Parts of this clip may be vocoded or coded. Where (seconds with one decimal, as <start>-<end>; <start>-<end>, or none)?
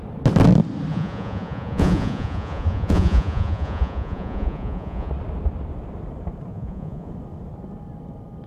0.9-5.1; 6.5-7.1